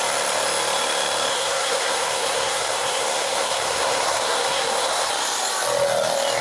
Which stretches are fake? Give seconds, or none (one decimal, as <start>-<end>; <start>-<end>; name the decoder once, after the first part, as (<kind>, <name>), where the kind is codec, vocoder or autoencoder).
1.3-5.1 (codec, SNAC)